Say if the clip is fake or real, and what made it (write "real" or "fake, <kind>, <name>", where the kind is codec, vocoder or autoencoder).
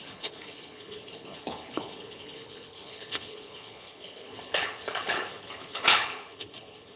fake, codec, HILCodec